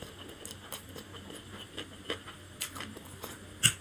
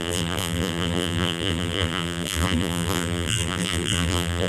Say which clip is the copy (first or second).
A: second